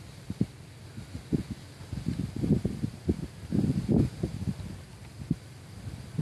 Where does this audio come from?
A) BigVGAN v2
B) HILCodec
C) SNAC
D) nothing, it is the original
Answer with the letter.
D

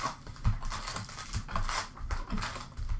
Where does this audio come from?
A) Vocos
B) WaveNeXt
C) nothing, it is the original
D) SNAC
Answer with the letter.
C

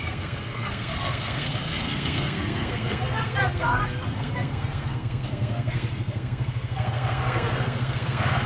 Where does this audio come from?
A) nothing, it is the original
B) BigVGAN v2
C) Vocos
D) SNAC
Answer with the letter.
D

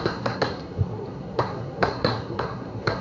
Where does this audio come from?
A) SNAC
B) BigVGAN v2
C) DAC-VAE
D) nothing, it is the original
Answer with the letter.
A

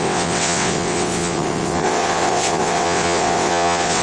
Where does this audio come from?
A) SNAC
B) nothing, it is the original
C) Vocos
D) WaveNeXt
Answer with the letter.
D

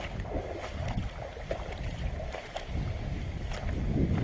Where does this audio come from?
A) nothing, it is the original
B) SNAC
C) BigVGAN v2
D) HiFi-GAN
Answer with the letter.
A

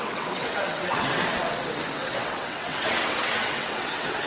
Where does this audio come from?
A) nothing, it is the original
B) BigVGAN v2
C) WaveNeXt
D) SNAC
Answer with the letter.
C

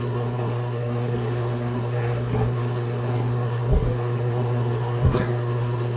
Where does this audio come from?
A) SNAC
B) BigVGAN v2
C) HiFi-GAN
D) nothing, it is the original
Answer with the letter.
A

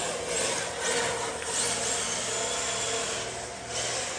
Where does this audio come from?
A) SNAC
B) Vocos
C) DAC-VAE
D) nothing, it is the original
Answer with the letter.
D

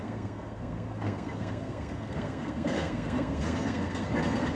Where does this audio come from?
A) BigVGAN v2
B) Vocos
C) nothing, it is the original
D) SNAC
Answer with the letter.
D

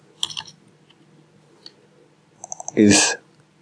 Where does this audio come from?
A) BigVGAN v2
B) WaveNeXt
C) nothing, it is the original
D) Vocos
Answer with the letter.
C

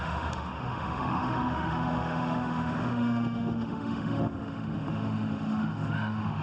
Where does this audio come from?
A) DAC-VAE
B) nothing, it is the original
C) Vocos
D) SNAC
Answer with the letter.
A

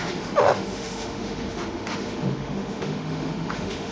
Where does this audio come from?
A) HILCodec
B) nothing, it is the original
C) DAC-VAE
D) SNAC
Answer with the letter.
C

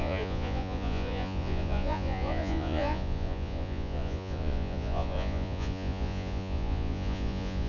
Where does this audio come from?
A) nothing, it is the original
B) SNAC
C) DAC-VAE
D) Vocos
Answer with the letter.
D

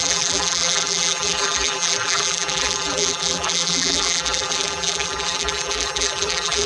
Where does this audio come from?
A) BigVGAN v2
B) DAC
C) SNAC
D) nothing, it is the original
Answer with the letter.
A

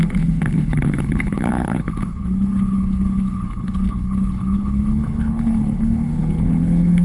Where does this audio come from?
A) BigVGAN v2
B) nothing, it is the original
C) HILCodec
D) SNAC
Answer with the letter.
C